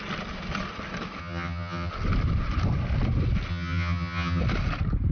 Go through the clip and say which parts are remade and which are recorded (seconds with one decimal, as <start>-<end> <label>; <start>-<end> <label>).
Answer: 0.0-1.2 recorded; 1.2-1.9 remade; 1.9-3.5 recorded; 3.5-4.4 remade; 4.4-5.1 recorded